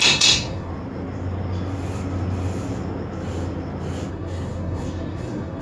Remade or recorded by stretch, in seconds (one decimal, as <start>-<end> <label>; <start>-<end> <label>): 0.0-0.7 remade; 0.7-4.1 recorded; 4.1-5.6 remade